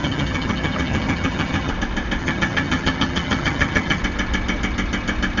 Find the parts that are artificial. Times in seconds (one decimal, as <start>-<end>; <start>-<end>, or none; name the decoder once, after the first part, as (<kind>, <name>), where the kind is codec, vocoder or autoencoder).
0.0-1.7 (vocoder, HiFi-GAN); 2.2-4.0